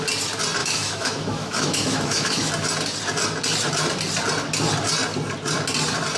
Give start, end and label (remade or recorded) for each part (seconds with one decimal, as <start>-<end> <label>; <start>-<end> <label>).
0.0-0.6 recorded; 0.6-2.5 remade; 2.5-6.2 recorded